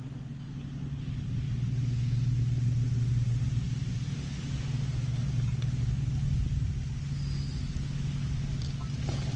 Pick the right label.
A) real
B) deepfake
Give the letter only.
A